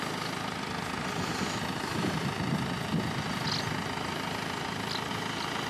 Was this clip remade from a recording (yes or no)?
no